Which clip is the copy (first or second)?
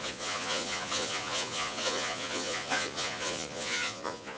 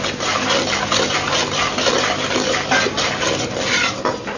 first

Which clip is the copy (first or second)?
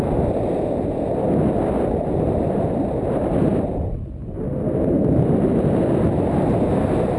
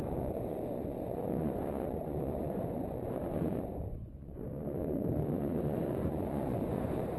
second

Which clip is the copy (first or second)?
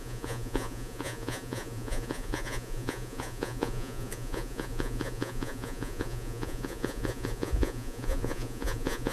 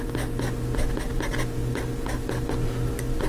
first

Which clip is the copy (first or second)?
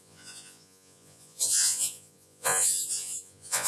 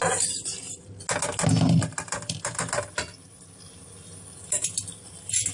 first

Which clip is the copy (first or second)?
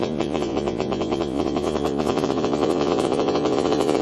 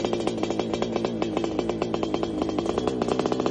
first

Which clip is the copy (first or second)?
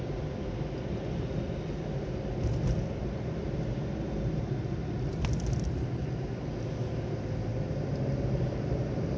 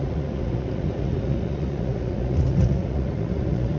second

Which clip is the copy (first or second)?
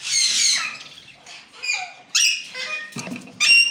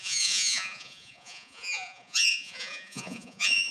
second